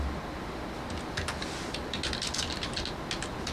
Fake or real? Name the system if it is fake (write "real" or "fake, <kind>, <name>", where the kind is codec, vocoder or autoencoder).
real